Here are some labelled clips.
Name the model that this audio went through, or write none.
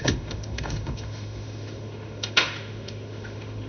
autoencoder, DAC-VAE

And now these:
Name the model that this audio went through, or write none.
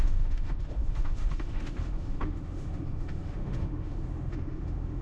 autoencoder, DAC-VAE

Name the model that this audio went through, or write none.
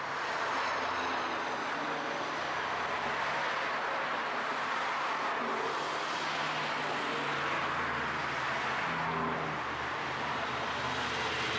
none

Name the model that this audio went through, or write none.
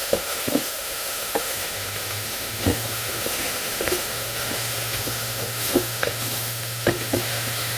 autoencoder, DAC-VAE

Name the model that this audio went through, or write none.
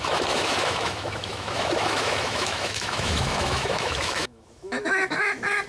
autoencoder, DAC-VAE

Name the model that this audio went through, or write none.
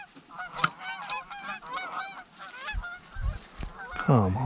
none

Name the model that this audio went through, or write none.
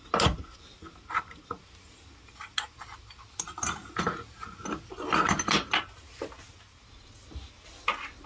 none